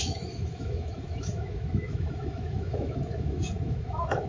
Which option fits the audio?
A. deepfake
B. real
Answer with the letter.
A